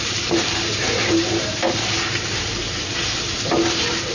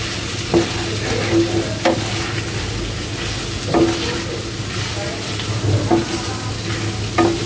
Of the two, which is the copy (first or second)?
first